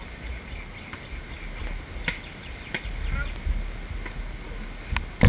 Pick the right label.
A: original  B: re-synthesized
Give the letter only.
A